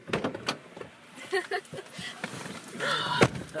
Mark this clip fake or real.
real